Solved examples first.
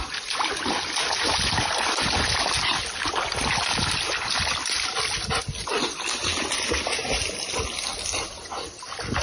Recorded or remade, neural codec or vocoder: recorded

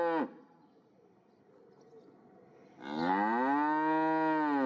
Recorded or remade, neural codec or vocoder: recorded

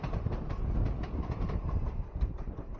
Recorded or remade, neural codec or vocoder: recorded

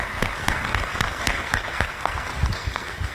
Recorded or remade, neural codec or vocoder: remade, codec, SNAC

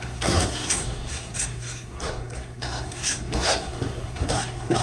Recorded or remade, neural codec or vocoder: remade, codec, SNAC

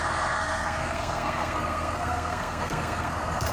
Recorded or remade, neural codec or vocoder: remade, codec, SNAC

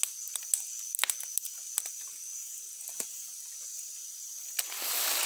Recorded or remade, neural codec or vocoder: recorded